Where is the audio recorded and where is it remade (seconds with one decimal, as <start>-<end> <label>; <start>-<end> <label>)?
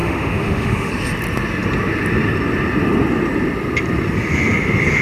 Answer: 0.0-0.9 remade; 0.9-5.0 recorded